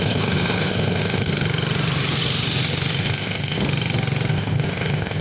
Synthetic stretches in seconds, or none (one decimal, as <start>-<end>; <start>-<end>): 0.0-1.3; 3.0-3.6; 4.3-5.2